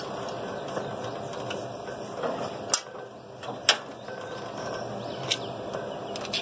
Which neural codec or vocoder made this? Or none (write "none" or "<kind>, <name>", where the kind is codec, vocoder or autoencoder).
none